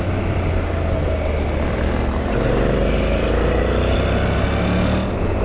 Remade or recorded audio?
recorded